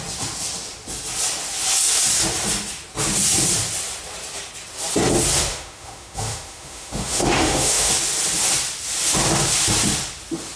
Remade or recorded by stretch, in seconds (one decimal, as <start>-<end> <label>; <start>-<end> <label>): 0.0-5.5 recorded; 5.5-7.9 remade; 7.9-10.6 recorded